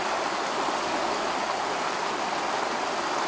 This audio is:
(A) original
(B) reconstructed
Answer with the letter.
A